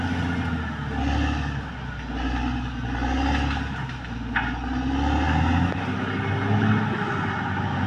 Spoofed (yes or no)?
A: no